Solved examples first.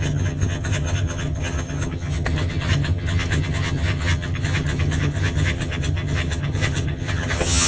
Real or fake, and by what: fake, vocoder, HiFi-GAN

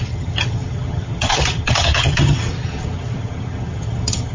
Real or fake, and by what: fake, vocoder, HiFi-GAN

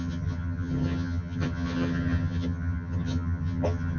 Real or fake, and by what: fake, vocoder, HiFi-GAN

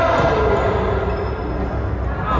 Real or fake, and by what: real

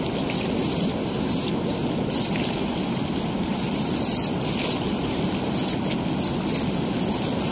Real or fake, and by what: real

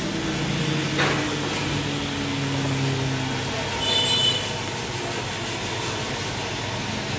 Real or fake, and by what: real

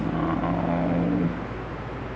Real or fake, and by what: real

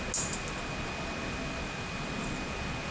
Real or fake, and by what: real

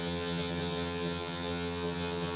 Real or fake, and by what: fake, vocoder, HiFi-GAN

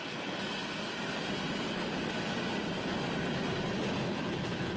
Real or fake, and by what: real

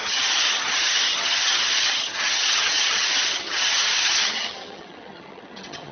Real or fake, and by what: fake, vocoder, HiFi-GAN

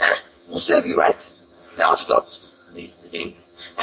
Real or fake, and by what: fake, vocoder, HiFi-GAN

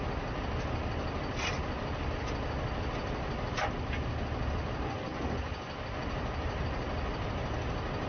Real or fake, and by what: real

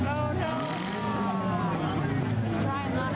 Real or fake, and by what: real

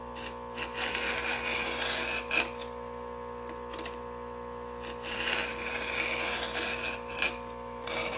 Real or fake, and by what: real